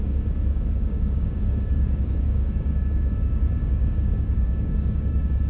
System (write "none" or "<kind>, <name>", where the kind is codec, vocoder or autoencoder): codec, DAC